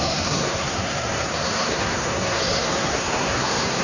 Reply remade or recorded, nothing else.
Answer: remade